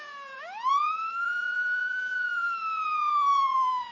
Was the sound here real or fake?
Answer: fake